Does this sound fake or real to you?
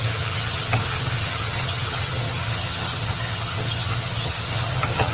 fake